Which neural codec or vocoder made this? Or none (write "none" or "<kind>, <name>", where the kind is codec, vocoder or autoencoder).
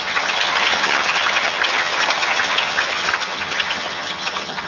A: vocoder, HiFi-GAN